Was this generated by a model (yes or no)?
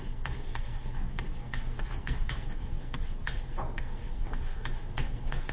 yes